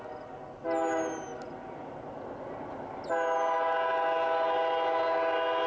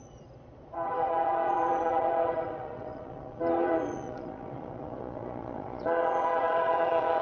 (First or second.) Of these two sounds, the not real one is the second